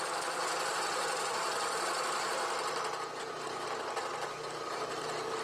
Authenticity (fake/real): fake